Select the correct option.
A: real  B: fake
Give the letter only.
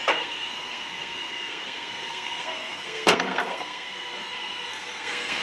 B